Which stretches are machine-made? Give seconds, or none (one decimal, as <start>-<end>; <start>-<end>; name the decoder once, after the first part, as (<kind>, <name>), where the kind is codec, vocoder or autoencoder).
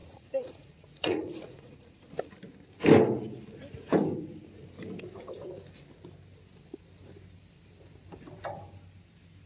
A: 0.0-2.0 (vocoder, Vocos)